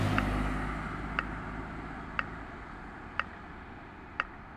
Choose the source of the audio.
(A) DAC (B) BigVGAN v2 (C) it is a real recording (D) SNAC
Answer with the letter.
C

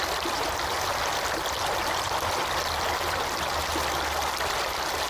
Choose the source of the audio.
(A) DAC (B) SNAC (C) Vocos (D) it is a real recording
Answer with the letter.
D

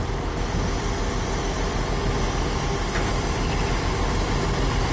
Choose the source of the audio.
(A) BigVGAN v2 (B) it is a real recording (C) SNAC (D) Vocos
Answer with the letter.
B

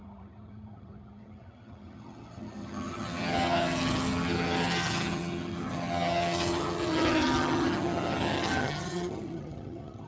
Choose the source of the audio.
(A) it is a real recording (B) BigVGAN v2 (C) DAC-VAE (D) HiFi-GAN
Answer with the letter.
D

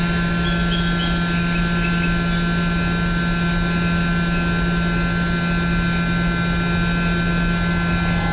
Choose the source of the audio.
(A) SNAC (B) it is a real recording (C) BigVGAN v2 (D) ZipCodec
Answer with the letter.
B